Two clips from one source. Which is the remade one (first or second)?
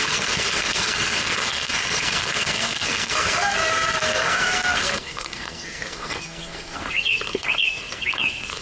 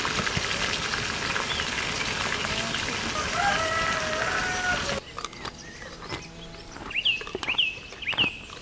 first